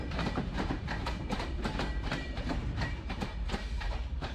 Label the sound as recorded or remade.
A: remade